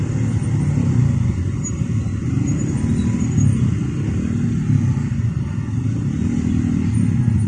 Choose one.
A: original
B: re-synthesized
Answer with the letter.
A